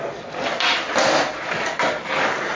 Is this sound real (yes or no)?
yes